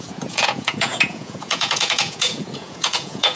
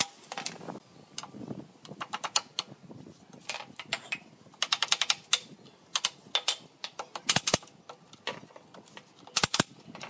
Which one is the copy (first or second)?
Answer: first